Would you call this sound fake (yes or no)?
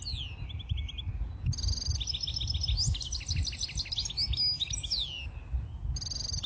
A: no